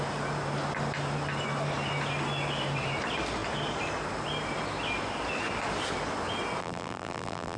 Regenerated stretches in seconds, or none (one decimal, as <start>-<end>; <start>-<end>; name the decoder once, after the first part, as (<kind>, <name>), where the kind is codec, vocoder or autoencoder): 6.6-7.6 (vocoder, BigVGAN v2)

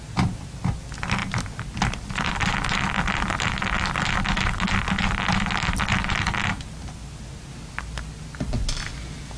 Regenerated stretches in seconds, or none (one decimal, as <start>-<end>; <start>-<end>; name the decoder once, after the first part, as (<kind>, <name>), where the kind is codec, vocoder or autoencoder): none

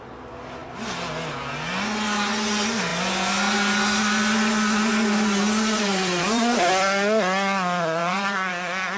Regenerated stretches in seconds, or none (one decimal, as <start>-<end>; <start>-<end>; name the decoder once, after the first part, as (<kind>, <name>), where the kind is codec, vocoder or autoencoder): 5.9-6.7 (vocoder, BigVGAN v2); 8.0-8.5

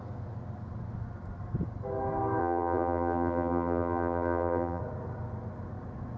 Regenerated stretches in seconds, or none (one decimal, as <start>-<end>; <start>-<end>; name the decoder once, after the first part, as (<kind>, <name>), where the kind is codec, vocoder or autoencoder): 2.4-4.8 (vocoder, BigVGAN v2)